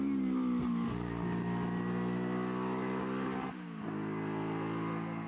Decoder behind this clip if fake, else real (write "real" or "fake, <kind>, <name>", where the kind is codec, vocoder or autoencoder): real